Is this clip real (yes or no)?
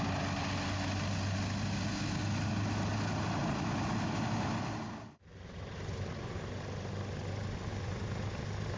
yes